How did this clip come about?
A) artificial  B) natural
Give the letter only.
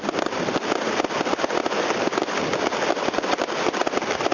B